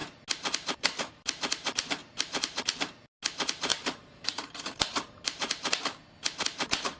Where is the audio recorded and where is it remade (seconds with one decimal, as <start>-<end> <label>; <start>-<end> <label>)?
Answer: 0.0-2.0 recorded; 2.0-2.6 remade; 2.6-3.7 recorded; 3.7-5.7 remade; 5.7-7.0 recorded